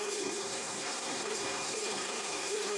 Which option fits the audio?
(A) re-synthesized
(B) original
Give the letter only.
A